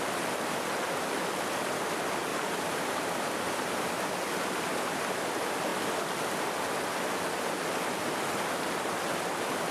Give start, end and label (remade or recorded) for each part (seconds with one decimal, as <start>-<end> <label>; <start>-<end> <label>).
0.0-2.3 recorded; 2.3-3.3 remade; 3.3-9.7 recorded